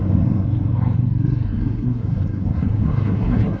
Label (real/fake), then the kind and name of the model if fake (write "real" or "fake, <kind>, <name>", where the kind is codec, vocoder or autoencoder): fake, codec, SNAC